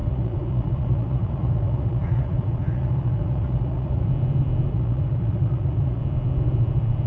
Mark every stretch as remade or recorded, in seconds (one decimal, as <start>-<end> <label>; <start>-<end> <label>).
0.0-4.1 remade; 4.1-4.7 recorded; 4.7-6.0 remade; 6.0-7.1 recorded